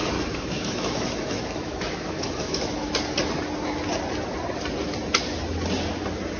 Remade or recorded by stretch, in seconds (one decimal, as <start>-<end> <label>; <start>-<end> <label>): 0.0-3.0 remade; 3.0-6.4 recorded